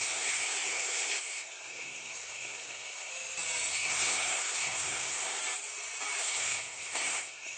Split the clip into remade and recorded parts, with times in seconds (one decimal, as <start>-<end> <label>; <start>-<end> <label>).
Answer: 0.0-3.1 remade; 3.1-3.7 recorded; 3.7-5.4 remade; 5.4-6.2 recorded; 6.2-7.6 remade